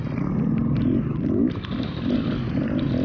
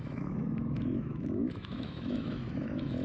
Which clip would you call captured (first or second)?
first